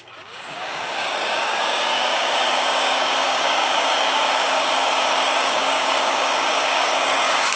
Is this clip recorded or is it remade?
remade